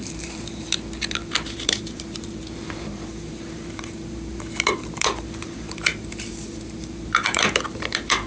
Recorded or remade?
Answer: remade